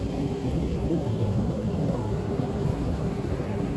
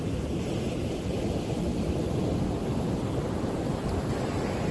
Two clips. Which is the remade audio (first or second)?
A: first